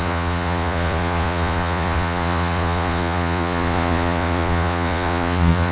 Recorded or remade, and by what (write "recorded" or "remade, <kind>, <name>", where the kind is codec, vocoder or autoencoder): remade, vocoder, Vocos